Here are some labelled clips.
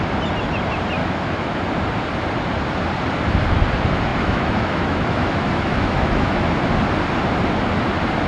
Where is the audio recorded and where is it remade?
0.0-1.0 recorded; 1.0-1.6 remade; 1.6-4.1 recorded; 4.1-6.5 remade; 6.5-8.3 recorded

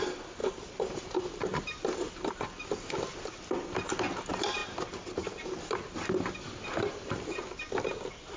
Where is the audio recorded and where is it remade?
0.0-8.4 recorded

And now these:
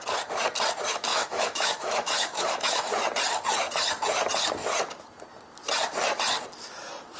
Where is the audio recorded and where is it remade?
0.0-1.1 recorded; 1.1-2.9 remade; 2.9-7.2 recorded

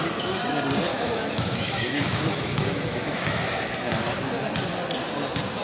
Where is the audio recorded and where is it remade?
0.0-0.9 recorded; 0.9-3.6 remade; 3.6-5.6 recorded